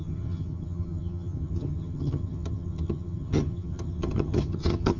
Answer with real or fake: fake